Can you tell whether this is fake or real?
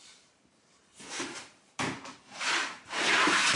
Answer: fake